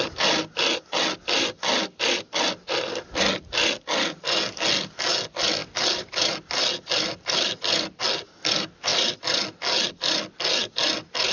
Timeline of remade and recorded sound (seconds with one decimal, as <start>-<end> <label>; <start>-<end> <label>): 0.0-11.3 recorded